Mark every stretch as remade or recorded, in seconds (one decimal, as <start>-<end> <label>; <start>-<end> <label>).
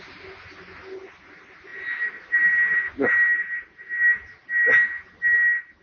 0.0-5.8 recorded